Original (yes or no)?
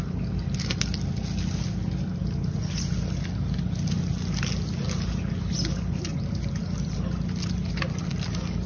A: yes